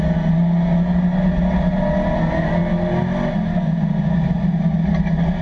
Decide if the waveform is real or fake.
real